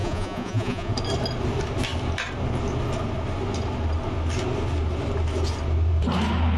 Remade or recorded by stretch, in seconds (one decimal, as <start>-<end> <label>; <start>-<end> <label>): 0.0-0.9 remade; 0.9-6.6 recorded